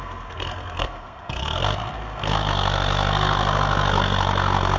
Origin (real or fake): fake